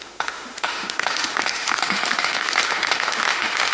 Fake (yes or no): yes